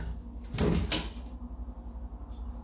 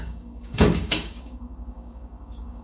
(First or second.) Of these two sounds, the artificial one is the second